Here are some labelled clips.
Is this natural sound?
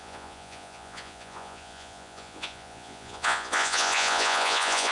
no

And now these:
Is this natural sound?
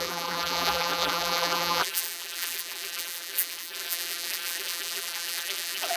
no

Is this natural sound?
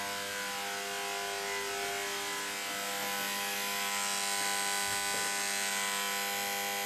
yes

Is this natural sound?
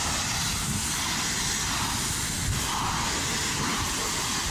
yes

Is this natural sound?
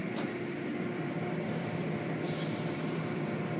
no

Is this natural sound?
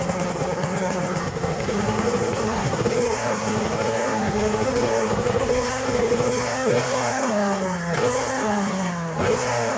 no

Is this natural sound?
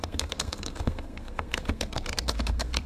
no